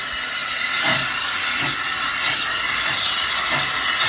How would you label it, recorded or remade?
recorded